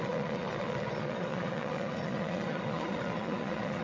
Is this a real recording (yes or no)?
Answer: no